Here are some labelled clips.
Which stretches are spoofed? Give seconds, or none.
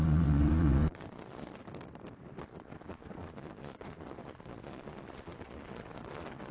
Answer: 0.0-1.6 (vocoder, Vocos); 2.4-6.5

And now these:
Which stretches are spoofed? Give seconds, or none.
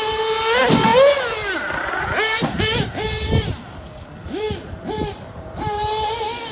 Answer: none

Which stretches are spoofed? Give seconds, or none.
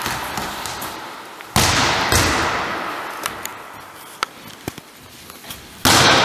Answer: none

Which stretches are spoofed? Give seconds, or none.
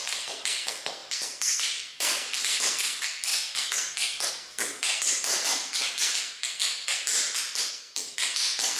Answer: 0.0-7.1 (codec, SNAC); 7.7-8.8